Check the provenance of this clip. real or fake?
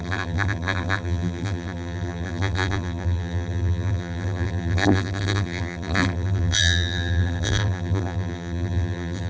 fake